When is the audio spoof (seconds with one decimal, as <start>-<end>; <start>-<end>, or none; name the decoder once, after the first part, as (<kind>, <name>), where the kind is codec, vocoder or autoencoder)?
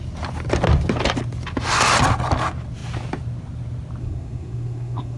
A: 4.0-5.2 (codec, SNAC)